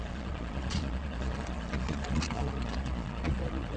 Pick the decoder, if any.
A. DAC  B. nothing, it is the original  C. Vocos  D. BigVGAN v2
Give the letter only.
C